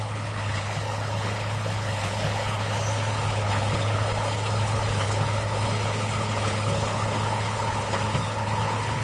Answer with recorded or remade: remade